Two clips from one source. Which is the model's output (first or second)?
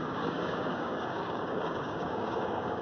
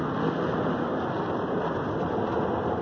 first